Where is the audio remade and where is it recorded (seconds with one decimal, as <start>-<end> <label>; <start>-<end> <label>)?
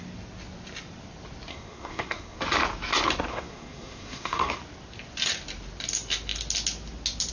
0.0-1.5 recorded; 1.5-2.4 remade; 2.4-3.3 recorded; 3.3-4.5 remade; 4.5-7.3 recorded